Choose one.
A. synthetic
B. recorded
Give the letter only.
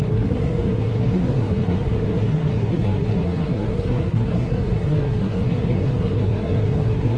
A